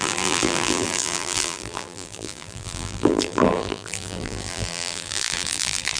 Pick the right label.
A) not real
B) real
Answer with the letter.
A